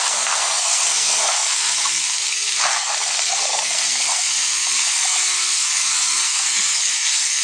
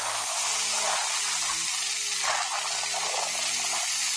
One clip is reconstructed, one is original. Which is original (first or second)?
second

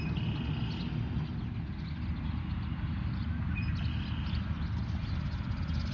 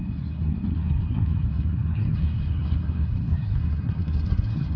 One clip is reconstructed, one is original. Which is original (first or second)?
first